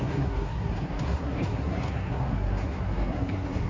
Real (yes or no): no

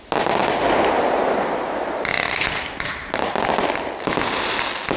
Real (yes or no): yes